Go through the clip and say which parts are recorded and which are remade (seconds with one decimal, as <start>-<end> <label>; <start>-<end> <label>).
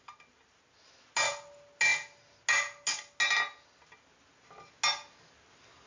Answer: 0.0-5.9 recorded